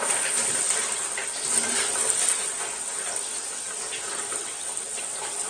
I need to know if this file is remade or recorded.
recorded